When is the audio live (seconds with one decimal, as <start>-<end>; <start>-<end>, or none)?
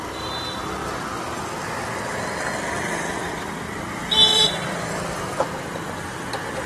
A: 0.0-4.3; 5.4-6.7